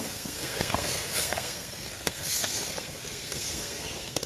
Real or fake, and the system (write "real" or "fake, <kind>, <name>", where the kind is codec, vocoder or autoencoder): fake, codec, SNAC